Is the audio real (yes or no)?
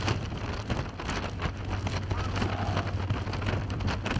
yes